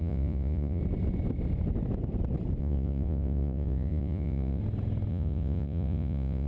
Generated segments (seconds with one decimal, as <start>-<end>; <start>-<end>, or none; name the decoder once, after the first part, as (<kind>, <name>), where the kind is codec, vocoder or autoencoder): 0.0-0.8 (vocoder, Vocos); 2.6-4.6; 5.1-6.5